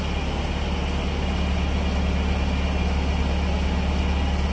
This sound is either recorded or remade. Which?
recorded